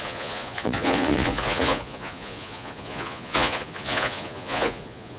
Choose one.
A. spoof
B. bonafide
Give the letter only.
A